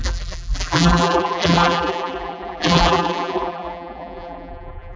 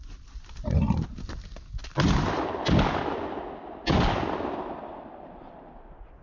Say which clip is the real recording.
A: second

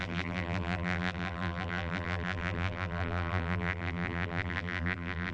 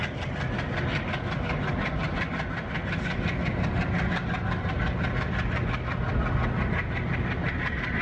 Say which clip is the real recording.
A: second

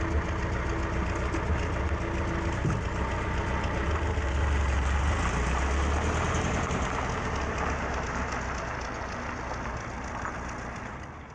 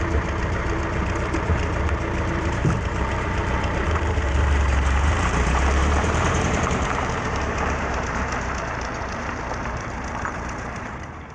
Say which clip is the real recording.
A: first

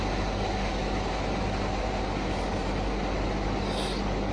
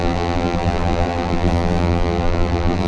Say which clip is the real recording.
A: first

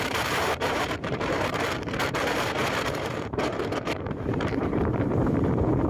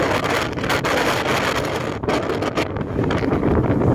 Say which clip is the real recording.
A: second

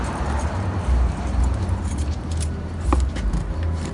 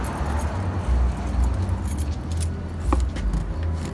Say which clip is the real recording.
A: second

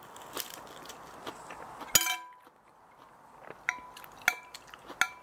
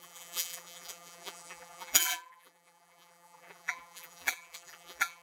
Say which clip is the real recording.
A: first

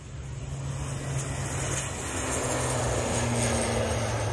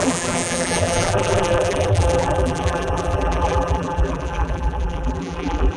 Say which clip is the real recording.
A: first